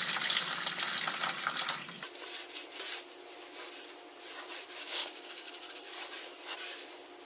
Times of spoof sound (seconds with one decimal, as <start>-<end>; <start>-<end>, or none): 4.8-5.5